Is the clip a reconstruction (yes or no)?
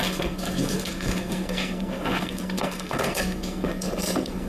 yes